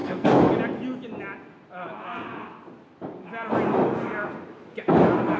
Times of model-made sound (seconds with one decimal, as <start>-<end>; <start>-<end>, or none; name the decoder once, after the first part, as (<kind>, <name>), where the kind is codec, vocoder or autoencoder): 0.0-0.5 (codec, SNAC)